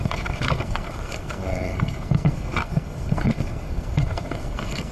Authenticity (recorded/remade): remade